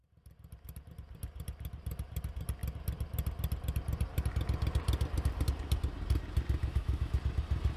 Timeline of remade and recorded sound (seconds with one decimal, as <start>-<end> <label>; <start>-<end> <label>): 0.0-6.6 recorded; 6.6-7.2 remade; 7.2-7.8 recorded